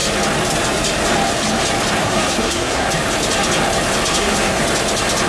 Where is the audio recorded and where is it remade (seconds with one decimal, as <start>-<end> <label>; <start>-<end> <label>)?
0.0-2.0 recorded; 2.0-2.9 remade; 2.9-4.1 recorded; 4.1-4.6 remade; 4.6-5.3 recorded